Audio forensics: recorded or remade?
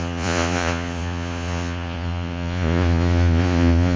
remade